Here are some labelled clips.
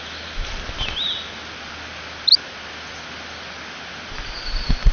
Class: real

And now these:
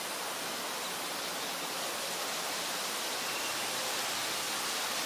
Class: real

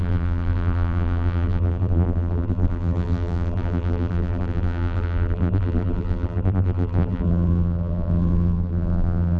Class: fake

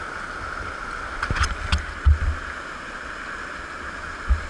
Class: real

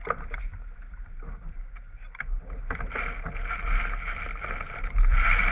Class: real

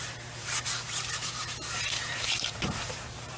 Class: fake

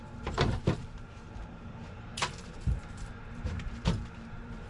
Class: fake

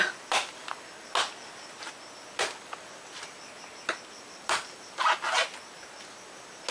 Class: real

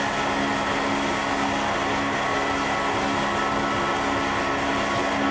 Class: real